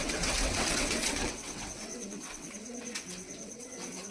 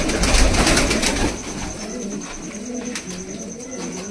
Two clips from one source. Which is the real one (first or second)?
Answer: second